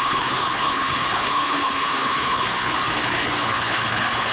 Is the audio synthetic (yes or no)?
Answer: yes